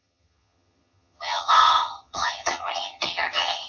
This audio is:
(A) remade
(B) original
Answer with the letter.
A